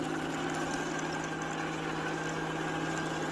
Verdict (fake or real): real